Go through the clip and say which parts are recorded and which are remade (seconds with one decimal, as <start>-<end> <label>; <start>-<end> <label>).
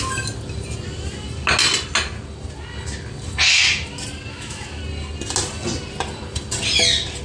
0.0-4.3 recorded; 4.3-4.8 remade; 4.8-7.2 recorded